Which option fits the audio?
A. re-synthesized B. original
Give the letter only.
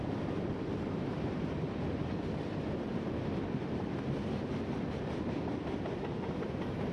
B